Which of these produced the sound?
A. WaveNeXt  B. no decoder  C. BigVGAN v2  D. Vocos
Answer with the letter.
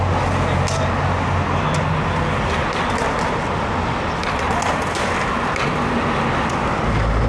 B